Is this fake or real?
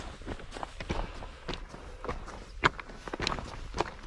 real